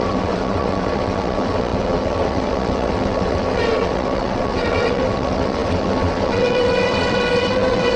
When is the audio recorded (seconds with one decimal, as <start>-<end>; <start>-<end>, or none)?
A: none